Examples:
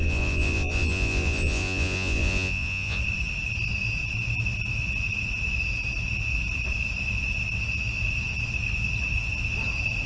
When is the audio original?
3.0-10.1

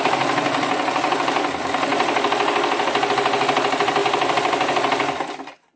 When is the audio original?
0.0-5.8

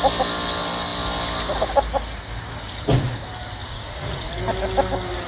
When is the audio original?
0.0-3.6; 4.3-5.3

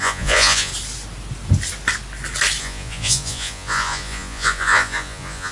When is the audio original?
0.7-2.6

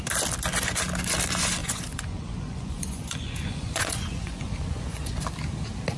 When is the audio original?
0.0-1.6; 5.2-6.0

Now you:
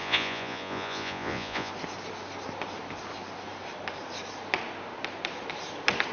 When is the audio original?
1.7-6.1

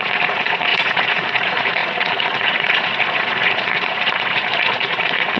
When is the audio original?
none

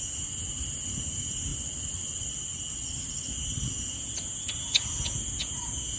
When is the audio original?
1.5-3.6